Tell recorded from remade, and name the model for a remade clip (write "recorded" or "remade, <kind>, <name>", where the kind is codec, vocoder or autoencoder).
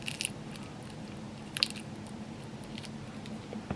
recorded